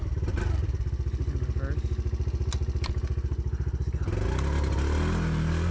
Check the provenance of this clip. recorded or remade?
recorded